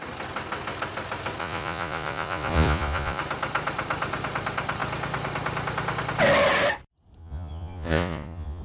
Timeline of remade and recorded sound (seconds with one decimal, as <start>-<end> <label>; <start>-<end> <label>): 0.0-1.4 recorded; 1.4-3.2 remade; 3.2-7.2 recorded; 7.2-8.6 remade